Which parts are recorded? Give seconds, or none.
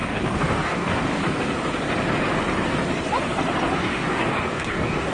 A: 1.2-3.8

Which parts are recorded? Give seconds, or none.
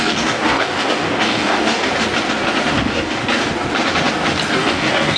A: 1.9-2.7; 3.2-4.5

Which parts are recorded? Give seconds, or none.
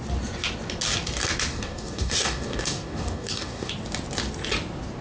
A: 0.0-1.5; 3.7-5.0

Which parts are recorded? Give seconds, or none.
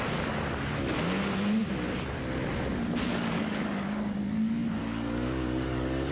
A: 0.0-3.1; 4.0-4.8